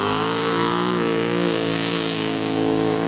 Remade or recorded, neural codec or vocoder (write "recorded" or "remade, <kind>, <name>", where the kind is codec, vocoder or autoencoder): remade, codec, DAC